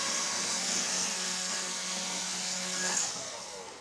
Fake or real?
fake